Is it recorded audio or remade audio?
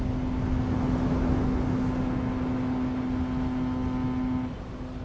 recorded